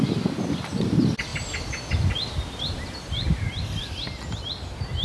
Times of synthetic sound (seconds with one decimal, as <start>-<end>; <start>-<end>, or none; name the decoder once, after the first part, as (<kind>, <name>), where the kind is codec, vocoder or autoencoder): none